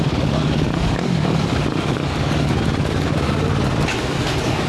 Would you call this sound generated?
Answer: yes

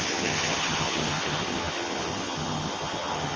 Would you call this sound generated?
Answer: yes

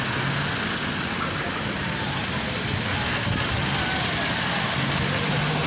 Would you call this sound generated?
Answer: no